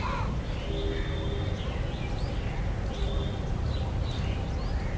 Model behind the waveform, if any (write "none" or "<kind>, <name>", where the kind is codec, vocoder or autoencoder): none